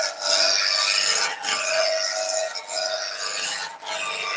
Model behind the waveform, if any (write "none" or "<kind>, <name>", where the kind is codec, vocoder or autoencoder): none